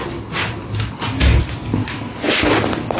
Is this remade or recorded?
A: recorded